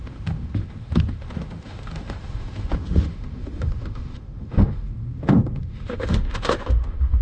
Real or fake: fake